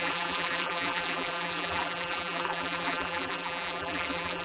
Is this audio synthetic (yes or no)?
yes